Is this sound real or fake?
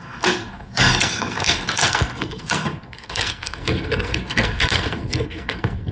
fake